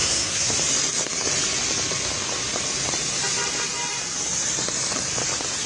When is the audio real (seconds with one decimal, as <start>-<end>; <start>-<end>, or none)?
0.5-5.7